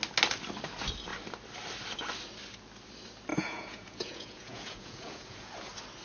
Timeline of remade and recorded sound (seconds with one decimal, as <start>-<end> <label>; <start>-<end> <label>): 0.0-3.3 recorded; 3.3-5.5 remade; 5.5-6.0 recorded